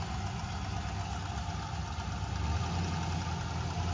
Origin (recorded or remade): recorded